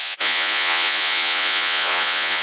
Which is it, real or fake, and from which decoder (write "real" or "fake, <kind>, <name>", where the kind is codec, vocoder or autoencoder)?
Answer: fake, vocoder, Vocos